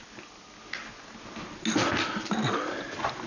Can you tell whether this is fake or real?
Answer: real